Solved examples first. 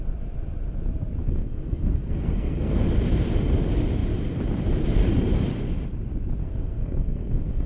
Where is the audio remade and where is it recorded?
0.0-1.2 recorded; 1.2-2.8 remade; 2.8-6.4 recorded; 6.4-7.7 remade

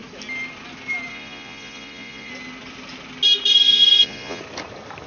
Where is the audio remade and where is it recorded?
0.0-1.1 recorded; 1.1-2.3 remade; 2.3-3.5 recorded; 3.5-4.4 remade; 4.4-5.1 recorded

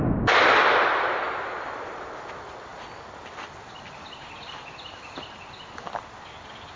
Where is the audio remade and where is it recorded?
0.0-6.8 recorded